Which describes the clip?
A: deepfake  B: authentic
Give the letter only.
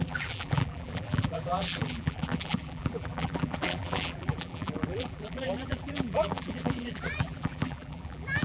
A